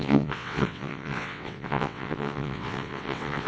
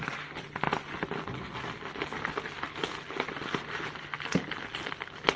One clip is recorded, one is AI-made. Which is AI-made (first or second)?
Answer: first